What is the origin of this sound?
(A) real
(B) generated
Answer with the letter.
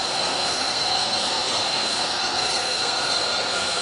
B